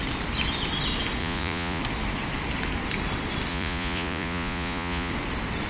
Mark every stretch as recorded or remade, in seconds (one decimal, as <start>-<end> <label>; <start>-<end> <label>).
0.0-1.2 recorded; 1.2-1.8 remade; 1.8-3.5 recorded; 3.5-5.1 remade; 5.1-5.7 recorded